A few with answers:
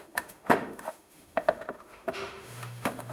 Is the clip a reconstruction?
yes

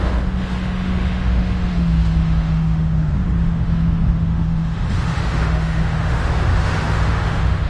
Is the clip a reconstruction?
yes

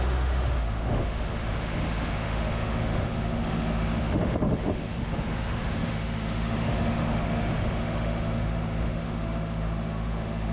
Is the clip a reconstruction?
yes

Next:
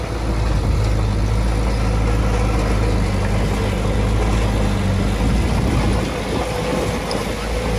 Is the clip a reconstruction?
no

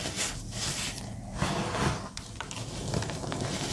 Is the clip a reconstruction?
no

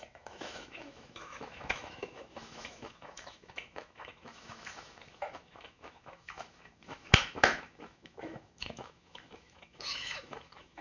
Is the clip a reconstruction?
yes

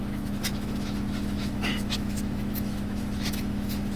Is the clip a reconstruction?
yes